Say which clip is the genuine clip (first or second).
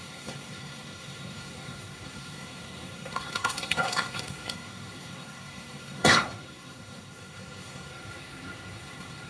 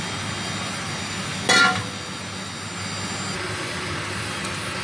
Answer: second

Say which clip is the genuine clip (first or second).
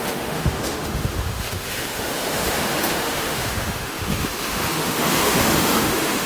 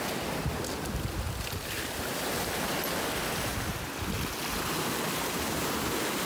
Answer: second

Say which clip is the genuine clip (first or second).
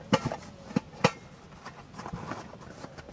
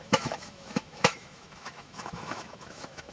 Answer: first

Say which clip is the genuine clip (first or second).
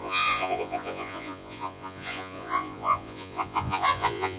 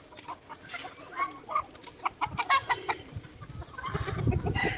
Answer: second